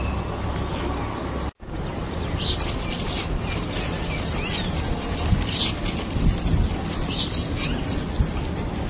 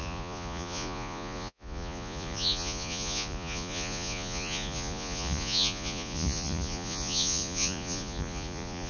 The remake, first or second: second